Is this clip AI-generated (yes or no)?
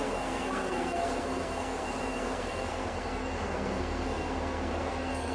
yes